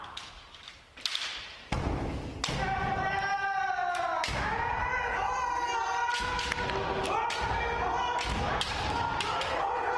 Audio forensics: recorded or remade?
recorded